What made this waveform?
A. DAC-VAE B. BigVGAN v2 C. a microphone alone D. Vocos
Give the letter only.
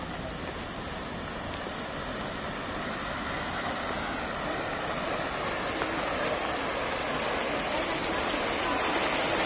C